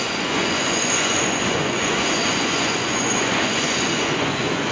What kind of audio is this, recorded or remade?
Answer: remade